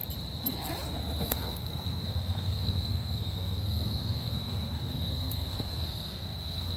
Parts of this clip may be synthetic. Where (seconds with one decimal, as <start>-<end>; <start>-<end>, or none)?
1.2-6.8